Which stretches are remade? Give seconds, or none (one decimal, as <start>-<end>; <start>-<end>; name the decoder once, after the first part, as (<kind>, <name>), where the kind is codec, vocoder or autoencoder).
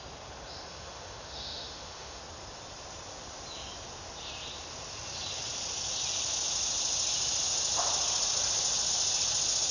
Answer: 0.7-2.2 (autoencoder, DAC-VAE)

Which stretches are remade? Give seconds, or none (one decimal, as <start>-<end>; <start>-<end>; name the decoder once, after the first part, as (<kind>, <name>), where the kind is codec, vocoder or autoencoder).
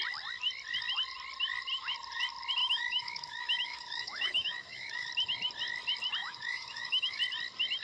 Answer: 2.6-5.1 (autoencoder, DAC-VAE); 6.2-7.2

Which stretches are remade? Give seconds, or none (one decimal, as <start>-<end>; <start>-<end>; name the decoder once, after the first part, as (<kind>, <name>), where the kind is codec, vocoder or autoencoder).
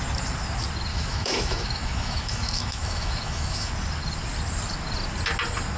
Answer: 0.9-3.7 (autoencoder, DAC-VAE)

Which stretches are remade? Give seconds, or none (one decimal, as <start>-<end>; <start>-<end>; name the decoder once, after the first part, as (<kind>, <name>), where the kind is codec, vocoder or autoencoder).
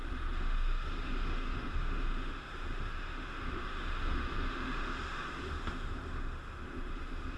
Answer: 0.0-7.4 (autoencoder, DAC-VAE)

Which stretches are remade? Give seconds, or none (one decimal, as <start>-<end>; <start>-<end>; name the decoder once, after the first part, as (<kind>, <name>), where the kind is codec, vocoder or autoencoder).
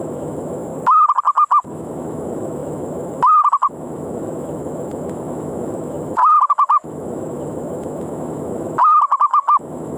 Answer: 0.0-0.7 (autoencoder, DAC-VAE); 1.7-10.0